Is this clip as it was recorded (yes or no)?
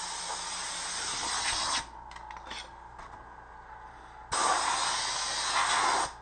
yes